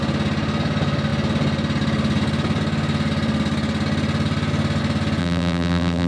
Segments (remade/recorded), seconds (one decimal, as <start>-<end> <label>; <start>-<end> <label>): 0.0-5.2 recorded; 5.2-6.1 remade